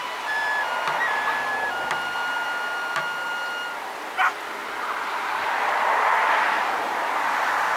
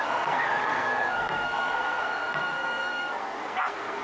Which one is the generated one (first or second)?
second